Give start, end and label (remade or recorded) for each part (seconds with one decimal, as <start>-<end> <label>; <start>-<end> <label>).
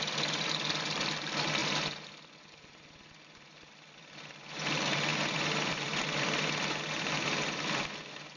0.0-8.4 remade